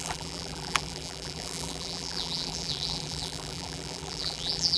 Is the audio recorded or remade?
remade